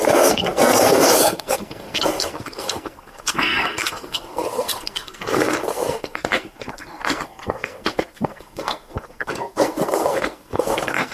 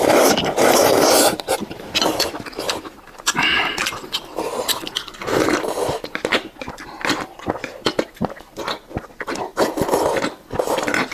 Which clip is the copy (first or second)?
first